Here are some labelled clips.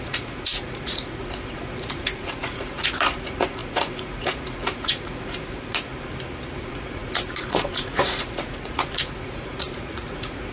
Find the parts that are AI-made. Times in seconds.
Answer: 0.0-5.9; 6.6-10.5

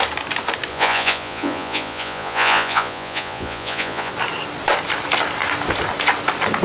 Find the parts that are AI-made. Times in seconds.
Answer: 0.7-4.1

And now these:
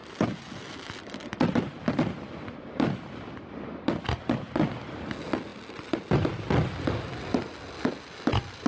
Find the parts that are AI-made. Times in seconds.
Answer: none

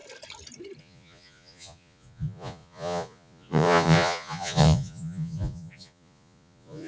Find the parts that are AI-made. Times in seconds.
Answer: 0.8-6.9